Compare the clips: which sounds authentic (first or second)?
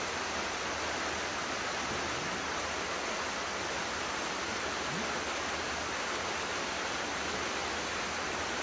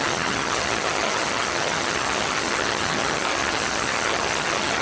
first